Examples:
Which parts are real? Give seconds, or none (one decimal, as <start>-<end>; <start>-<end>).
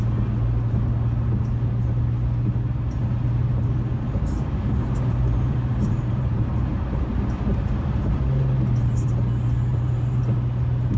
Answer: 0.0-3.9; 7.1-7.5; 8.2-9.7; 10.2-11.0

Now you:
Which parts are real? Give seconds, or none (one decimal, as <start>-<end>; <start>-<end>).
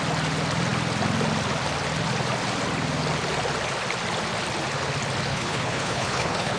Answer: 0.0-5.3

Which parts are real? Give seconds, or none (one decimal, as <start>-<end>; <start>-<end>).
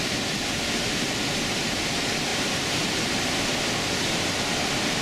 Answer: 0.0-2.3; 2.9-5.0